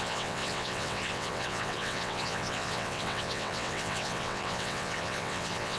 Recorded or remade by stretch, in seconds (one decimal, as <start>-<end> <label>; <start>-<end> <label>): 0.0-5.8 remade